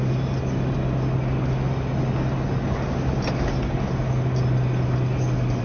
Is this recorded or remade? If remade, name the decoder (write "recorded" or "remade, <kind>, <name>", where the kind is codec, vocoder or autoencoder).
recorded